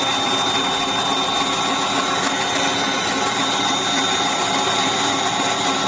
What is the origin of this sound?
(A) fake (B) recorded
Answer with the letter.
B